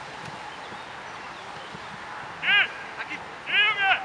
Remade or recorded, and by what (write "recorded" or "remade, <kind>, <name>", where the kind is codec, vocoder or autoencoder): recorded